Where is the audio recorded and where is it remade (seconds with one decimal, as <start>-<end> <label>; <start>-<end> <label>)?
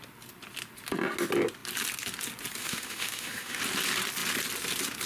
0.0-2.6 recorded; 2.6-3.6 remade; 3.6-5.1 recorded